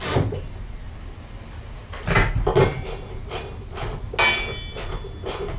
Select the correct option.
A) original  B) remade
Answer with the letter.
A